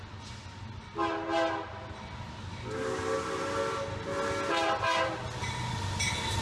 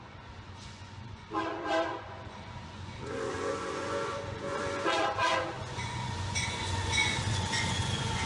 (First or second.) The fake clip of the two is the second